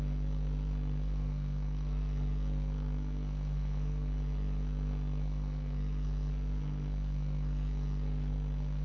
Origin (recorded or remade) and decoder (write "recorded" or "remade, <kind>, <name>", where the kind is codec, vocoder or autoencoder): remade, codec, SNAC